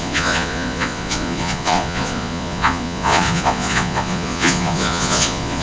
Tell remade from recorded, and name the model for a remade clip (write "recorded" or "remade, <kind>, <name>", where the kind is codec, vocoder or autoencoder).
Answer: remade, vocoder, Vocos